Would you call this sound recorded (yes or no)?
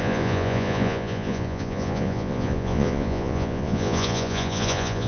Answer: no